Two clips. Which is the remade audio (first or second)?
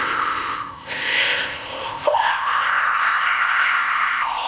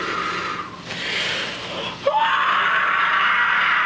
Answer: first